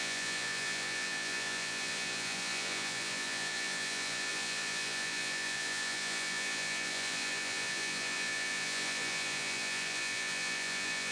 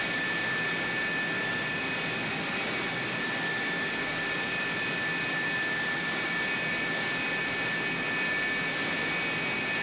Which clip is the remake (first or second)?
first